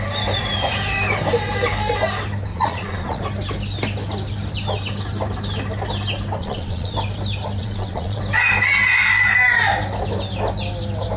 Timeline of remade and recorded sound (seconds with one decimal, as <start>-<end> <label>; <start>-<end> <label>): 0.0-2.5 recorded; 2.5-3.2 remade; 3.2-6.4 recorded; 6.4-6.9 remade; 6.9-7.6 recorded; 7.6-8.2 remade; 8.2-11.2 recorded

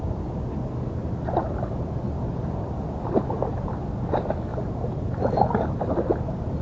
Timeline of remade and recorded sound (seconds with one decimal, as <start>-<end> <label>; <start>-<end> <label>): 0.0-6.6 recorded

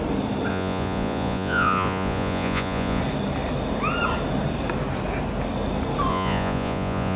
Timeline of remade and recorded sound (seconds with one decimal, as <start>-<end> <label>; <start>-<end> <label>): 0.0-0.5 recorded; 0.5-3.0 remade; 3.0-6.1 recorded; 6.1-7.2 remade

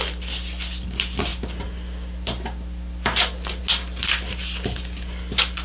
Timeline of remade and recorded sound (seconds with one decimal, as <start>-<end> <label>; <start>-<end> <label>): 0.0-5.6 recorded

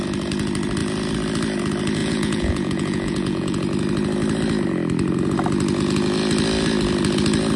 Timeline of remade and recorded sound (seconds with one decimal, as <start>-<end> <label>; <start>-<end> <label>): 0.0-2.0 recorded; 2.0-3.6 remade; 3.6-7.6 recorded

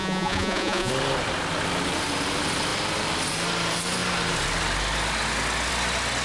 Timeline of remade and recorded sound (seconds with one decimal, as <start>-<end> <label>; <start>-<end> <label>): 0.0-0.9 remade; 0.9-6.2 recorded

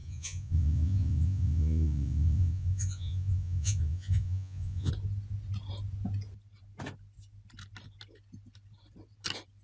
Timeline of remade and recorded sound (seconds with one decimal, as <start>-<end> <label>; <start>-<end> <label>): 0.0-4.9 remade; 4.9-9.6 recorded

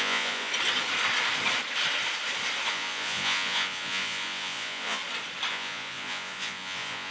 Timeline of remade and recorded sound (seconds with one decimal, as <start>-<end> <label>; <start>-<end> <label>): 0.0-0.5 remade; 0.5-2.7 recorded; 2.7-5.0 remade; 5.0-5.5 recorded; 5.5-7.1 remade